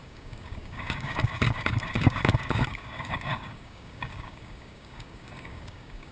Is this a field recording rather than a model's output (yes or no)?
no